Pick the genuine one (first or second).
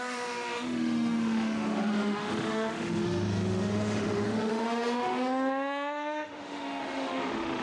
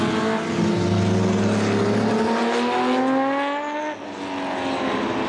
second